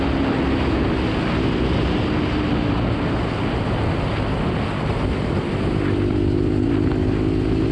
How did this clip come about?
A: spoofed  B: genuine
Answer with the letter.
B